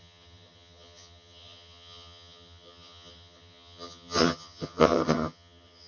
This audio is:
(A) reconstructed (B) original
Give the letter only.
A